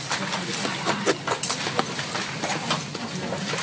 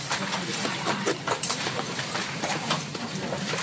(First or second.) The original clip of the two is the first